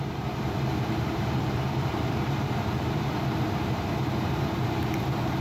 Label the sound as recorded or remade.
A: remade